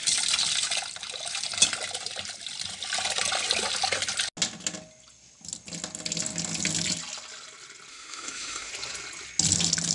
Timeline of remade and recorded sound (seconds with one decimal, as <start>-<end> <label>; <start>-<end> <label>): 0.0-7.9 recorded; 7.9-8.7 remade; 8.7-9.9 recorded